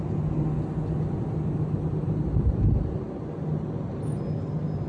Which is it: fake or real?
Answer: real